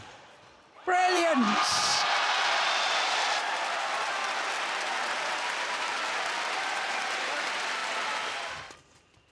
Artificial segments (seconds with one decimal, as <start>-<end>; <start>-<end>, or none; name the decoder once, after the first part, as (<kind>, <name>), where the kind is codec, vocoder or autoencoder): 0.0-1.9 (vocoder, BigVGAN v2); 2.8-7.8; 8.3-9.3